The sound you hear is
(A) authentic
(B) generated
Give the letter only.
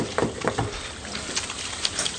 A